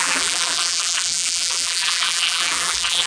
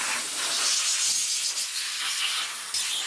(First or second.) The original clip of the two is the second